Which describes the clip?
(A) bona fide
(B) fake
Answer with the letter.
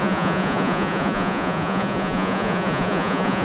B